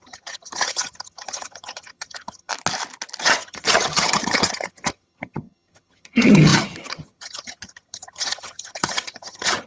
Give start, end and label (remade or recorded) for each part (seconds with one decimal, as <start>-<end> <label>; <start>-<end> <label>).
0.0-2.5 remade; 2.5-3.2 recorded; 3.2-9.7 remade